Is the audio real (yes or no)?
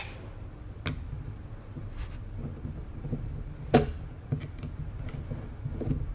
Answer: yes